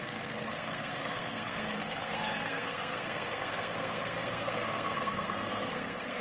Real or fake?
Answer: fake